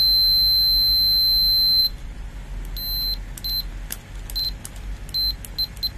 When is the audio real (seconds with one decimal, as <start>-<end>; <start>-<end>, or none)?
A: 0.0-1.8; 2.3-6.0